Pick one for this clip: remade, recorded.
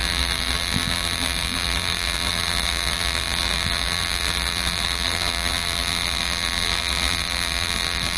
remade